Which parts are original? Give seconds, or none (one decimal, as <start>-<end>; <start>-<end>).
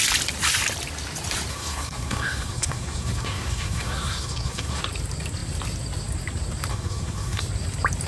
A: 0.0-1.5; 4.8-6.7; 7.4-8.1